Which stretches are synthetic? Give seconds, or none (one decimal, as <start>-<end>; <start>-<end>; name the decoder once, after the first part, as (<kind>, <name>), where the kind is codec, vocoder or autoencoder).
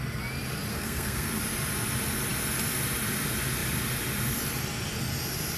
0.7-1.4 (codec, SNAC)